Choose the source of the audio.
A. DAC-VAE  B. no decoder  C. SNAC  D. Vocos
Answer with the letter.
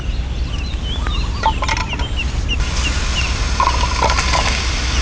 B